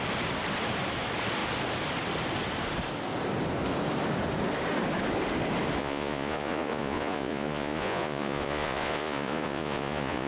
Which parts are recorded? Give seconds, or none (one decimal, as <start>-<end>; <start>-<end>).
0.0-5.8